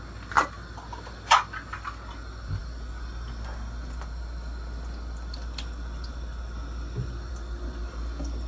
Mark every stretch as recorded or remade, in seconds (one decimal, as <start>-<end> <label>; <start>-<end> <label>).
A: 0.0-8.5 recorded